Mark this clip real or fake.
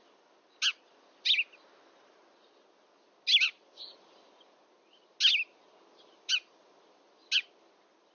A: real